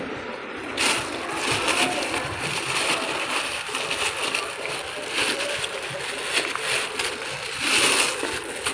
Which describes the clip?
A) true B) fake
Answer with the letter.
A